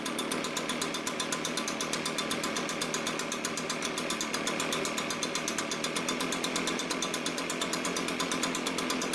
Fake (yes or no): no